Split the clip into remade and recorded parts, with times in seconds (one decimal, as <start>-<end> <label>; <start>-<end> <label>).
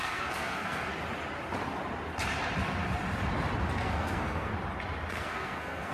0.0-0.9 remade; 0.9-3.7 recorded; 3.7-4.5 remade; 4.5-5.1 recorded; 5.1-5.9 remade